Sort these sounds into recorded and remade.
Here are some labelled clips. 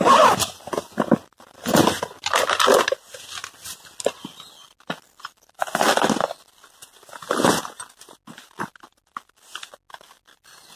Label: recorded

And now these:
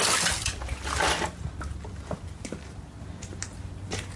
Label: recorded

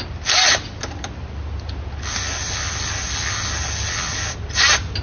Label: recorded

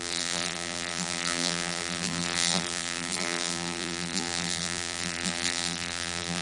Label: remade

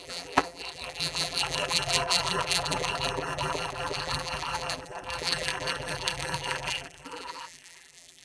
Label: remade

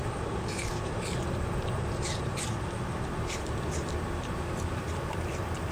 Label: remade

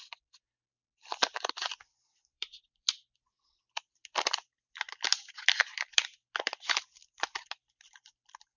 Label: remade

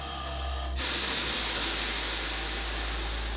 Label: recorded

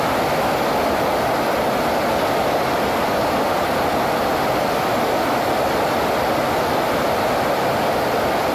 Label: recorded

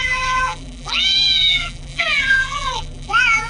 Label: remade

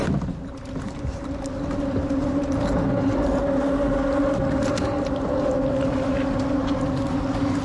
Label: recorded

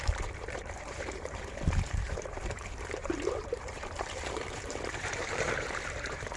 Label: remade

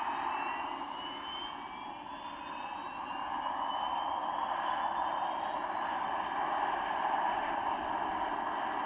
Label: recorded